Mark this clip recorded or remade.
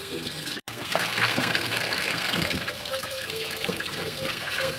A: remade